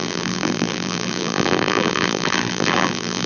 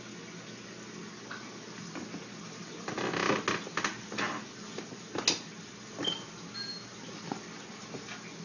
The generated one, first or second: first